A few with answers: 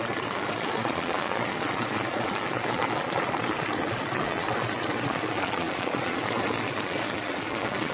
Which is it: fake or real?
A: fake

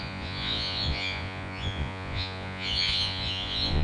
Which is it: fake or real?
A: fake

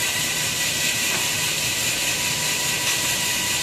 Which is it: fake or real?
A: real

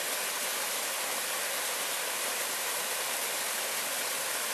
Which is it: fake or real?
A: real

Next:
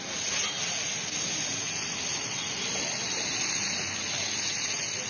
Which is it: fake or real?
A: real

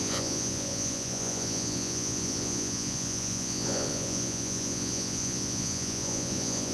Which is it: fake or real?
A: fake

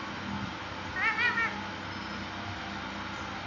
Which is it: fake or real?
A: real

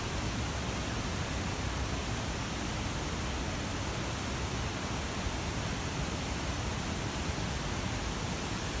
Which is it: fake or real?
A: real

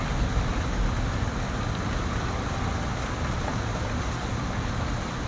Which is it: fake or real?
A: real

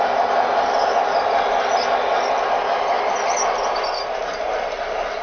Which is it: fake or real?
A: real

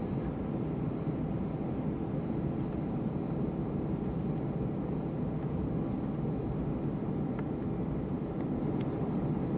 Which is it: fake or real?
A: real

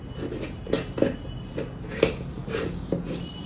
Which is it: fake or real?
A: real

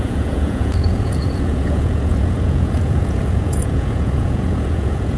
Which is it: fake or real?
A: fake